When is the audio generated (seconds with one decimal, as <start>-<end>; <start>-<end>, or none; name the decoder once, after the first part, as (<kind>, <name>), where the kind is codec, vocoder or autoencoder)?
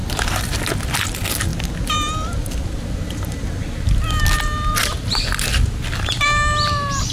none